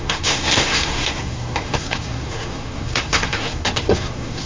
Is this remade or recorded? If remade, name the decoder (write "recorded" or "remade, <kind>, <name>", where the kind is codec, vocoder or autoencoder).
remade, codec, SNAC